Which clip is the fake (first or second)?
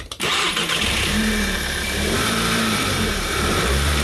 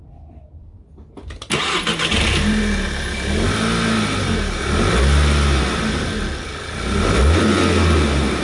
first